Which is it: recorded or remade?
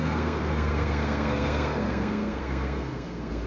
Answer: remade